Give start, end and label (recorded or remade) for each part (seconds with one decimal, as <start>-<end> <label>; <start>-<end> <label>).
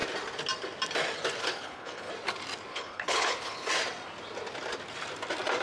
0.0-1.4 recorded; 1.4-2.1 remade; 2.1-2.7 recorded; 2.7-3.7 remade; 3.7-5.6 recorded